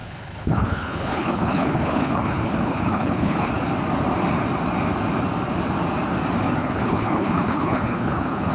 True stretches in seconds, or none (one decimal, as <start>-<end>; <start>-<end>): 3.5-6.6